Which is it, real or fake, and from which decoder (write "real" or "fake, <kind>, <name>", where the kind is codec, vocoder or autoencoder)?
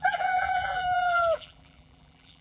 fake, vocoder, BigVGAN v2